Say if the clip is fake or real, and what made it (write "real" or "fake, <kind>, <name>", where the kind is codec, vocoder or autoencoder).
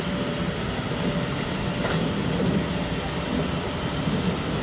real